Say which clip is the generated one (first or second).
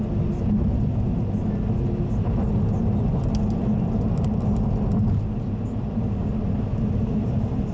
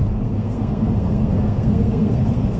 second